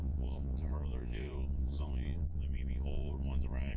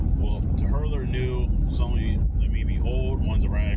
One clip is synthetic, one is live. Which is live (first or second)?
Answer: second